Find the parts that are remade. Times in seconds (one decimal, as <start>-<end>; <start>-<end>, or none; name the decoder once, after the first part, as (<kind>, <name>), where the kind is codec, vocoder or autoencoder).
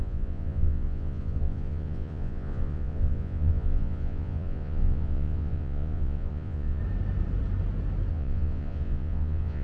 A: 0.0-6.8 (vocoder, Vocos); 8.1-9.6